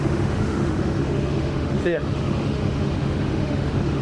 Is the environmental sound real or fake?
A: fake